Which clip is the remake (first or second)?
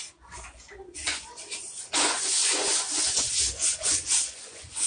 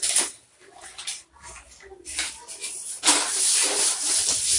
first